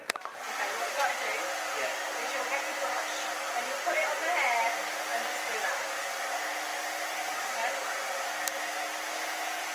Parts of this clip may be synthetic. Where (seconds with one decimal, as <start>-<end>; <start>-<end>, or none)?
none